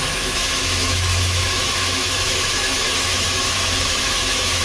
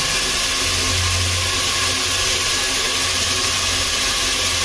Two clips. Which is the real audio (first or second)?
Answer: second